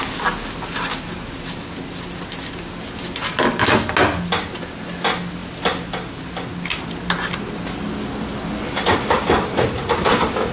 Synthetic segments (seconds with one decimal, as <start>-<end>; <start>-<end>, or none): none